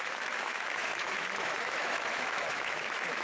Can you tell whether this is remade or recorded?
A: remade